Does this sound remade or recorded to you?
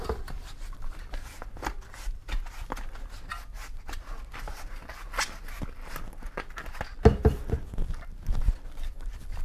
recorded